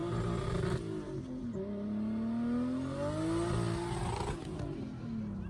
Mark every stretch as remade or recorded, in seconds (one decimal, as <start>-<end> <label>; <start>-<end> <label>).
0.0-5.5 recorded